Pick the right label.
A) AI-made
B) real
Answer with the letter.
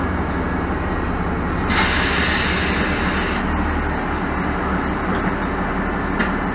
B